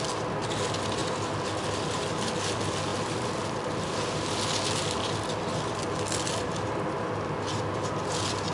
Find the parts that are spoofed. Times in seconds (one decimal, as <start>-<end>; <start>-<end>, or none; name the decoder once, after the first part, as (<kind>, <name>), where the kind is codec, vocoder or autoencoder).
2.9-3.9 (vocoder, BigVGAN v2)